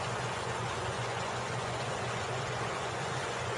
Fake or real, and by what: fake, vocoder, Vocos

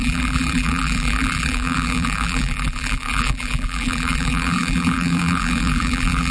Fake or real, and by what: fake, vocoder, BigVGAN v2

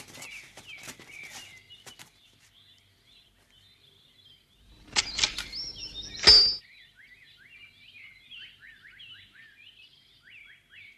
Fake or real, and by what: real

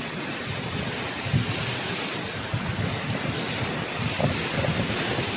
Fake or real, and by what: real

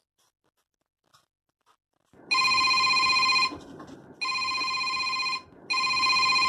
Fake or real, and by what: real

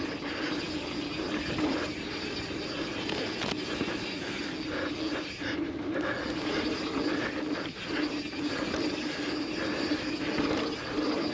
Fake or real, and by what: real